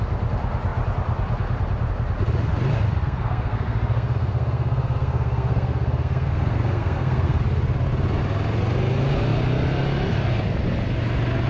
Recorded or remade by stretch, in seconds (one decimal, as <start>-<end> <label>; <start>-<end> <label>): 0.0-3.0 recorded; 3.0-7.4 remade; 7.4-11.5 recorded